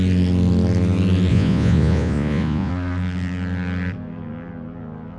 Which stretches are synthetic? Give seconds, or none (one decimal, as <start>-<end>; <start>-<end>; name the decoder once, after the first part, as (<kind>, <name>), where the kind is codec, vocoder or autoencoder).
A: 1.3-2.7 (vocoder, Vocos)